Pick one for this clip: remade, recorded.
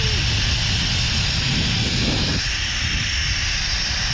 recorded